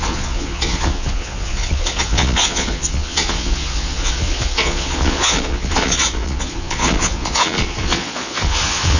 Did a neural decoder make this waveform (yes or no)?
yes